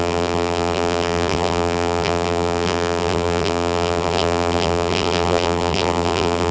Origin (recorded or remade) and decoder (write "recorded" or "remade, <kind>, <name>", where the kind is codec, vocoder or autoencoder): remade, vocoder, BigVGAN v2